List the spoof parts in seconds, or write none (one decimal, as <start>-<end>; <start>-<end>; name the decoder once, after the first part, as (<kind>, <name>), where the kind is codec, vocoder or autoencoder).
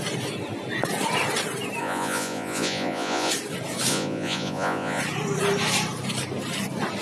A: 1.8-3.3 (vocoder, Vocos); 3.9-5.0